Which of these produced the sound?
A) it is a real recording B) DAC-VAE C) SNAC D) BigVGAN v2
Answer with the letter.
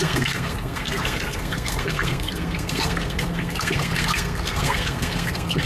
C